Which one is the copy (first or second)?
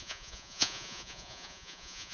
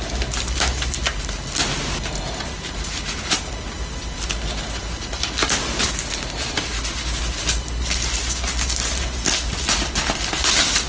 first